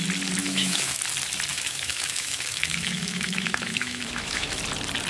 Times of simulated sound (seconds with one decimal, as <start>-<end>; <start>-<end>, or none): 0.4-1.0; 1.5-4.6